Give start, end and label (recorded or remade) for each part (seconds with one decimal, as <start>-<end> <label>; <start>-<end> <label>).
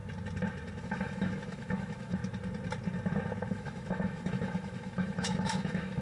0.0-0.8 recorded; 0.8-2.2 remade; 2.2-3.5 recorded; 3.5-6.0 remade